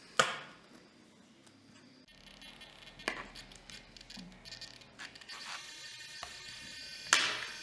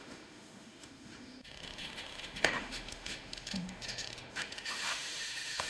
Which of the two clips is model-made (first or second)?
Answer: second